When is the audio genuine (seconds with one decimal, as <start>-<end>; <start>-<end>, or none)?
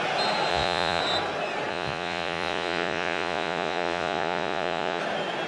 0.0-0.5; 1.0-1.7; 5.0-5.5